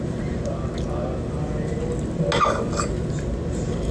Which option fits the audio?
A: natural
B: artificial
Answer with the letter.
A